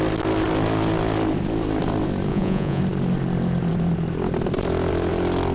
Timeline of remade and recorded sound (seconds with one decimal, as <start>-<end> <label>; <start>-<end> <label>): 0.0-2.3 recorded; 2.3-2.8 remade; 2.8-5.5 recorded